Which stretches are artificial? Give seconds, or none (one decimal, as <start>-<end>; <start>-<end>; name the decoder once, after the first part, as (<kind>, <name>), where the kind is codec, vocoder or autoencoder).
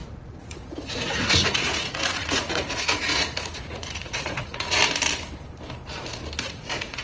0.0-4.8 (vocoder, Vocos); 6.4-7.0